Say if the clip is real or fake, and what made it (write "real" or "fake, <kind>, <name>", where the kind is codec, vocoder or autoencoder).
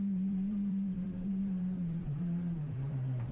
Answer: fake, vocoder, BigVGAN v2